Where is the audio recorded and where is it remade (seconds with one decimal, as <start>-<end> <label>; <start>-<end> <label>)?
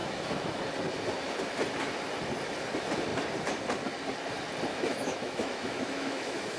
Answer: 0.0-0.6 remade; 0.6-4.7 recorded; 4.7-6.6 remade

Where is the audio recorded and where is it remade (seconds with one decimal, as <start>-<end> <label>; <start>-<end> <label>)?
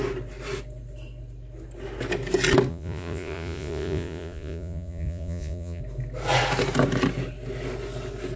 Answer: 0.0-2.7 recorded; 2.7-5.8 remade; 5.8-8.4 recorded